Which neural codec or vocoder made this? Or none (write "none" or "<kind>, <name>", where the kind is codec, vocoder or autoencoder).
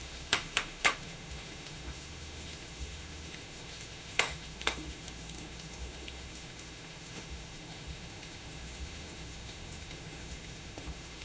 autoencoder, DAC-VAE